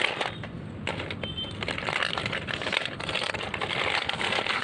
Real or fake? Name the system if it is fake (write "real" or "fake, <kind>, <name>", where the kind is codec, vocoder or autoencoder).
real